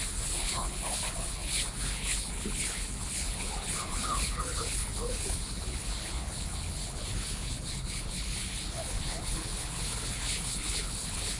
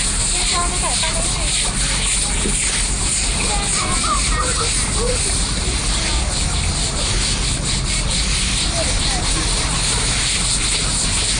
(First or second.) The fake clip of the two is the first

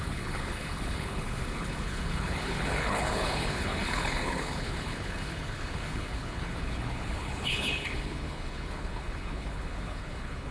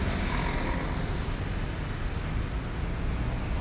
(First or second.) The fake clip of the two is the first